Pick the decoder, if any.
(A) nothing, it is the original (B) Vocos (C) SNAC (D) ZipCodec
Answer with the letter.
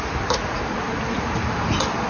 A